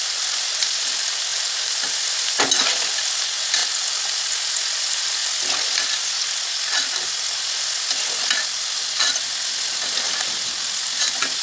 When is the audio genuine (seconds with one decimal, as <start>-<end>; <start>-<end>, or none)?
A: 0.0-11.4